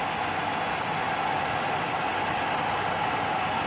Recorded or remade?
recorded